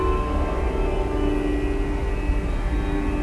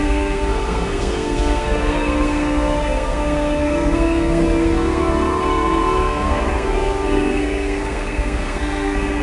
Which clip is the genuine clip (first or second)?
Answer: first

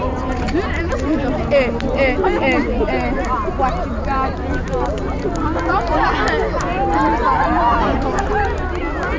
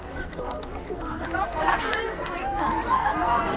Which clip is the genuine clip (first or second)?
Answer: first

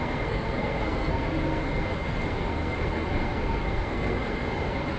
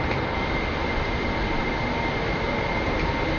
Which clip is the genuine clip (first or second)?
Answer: second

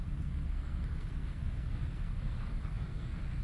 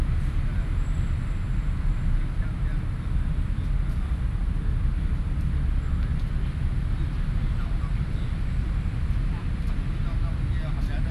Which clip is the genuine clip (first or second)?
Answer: second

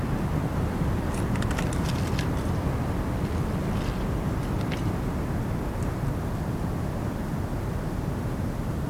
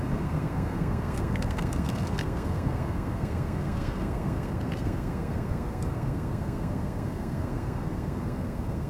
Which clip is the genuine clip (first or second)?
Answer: first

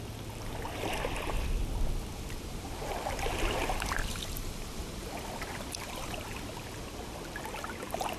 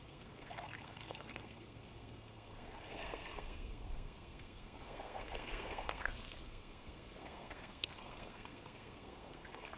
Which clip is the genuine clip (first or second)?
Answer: first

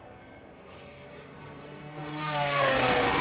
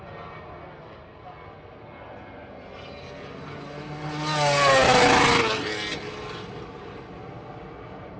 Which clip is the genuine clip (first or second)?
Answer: second